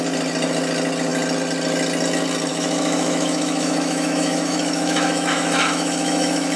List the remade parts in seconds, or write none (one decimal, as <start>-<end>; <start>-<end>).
2.5-6.6